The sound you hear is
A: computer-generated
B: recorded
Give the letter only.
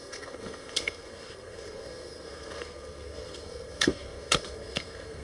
A